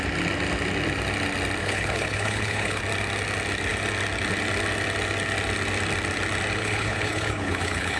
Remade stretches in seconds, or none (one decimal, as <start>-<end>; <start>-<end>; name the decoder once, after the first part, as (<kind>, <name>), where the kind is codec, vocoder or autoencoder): 1.6-2.8 (codec, HILCodec); 6.6-8.0